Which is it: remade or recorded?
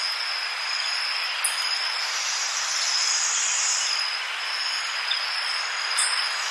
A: recorded